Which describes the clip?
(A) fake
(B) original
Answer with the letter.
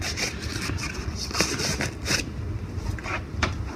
B